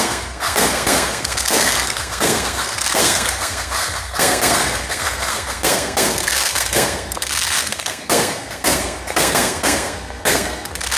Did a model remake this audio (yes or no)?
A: yes